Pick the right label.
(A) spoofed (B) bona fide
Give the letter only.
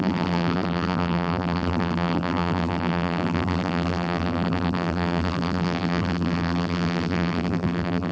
A